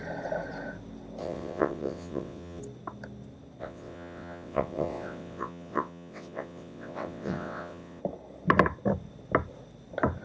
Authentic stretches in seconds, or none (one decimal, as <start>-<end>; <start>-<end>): 0.0-1.2; 2.6-3.6; 8.0-10.2